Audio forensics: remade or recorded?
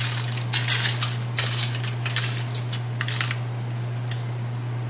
recorded